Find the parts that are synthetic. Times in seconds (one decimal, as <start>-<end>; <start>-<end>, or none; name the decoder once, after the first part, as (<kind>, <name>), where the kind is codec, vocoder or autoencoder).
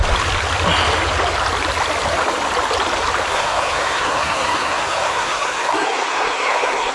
3.3-6.9 (codec, SNAC)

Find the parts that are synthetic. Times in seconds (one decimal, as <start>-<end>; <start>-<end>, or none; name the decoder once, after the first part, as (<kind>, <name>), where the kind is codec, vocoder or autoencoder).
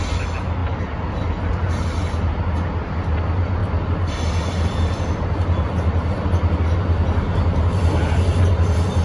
none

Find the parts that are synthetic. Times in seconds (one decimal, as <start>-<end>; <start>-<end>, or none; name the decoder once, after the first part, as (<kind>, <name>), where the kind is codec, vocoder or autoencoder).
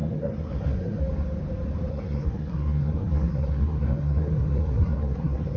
0.0-1.0 (codec, SNAC); 1.9-5.6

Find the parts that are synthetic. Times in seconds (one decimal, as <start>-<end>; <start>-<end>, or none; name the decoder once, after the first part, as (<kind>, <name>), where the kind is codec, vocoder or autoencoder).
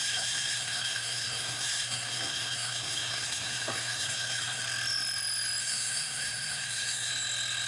0.0-4.6 (codec, SNAC); 5.6-7.1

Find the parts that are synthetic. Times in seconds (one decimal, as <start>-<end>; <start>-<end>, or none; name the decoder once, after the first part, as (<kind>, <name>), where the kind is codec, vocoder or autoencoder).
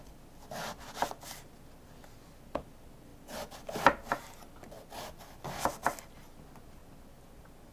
none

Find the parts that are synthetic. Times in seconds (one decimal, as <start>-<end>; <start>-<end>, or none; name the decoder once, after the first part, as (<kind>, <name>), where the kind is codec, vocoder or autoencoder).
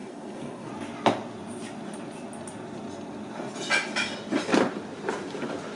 0.0-0.7 (codec, SNAC)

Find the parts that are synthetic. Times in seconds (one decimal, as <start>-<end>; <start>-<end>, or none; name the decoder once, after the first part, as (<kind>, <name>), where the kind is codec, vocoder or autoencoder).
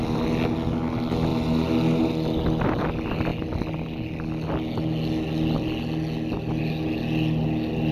none